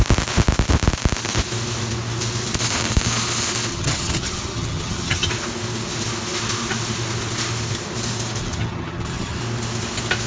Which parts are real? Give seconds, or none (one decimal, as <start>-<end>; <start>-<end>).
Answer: 0.0-3.7; 5.3-8.4; 9.4-10.3